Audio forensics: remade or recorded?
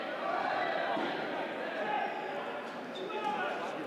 recorded